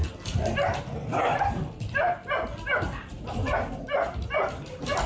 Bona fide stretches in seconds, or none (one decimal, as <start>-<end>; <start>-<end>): 0.0-5.1